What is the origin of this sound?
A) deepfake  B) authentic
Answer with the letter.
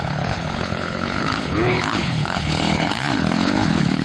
A